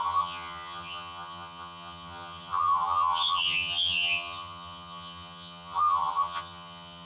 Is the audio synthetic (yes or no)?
yes